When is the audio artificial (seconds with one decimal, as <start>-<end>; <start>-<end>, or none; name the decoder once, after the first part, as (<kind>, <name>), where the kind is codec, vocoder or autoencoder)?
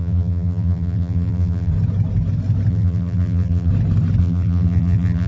0.0-1.7 (vocoder, BigVGAN v2); 2.7-3.7; 4.2-5.3